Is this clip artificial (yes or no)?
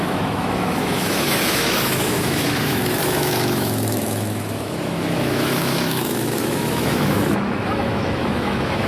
yes